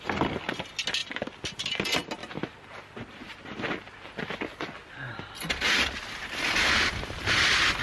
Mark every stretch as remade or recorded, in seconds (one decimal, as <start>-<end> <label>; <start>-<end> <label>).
0.0-7.8 recorded